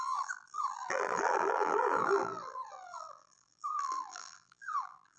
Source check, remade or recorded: remade